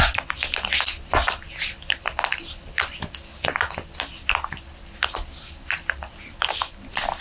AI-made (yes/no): no